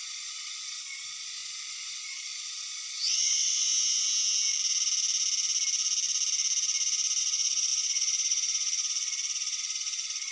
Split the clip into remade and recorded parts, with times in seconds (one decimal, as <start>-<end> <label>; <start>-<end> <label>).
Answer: 0.0-3.7 remade; 3.7-7.2 recorded; 7.2-10.3 remade